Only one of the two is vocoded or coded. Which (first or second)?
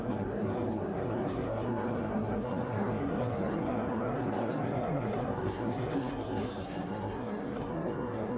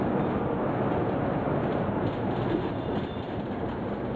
first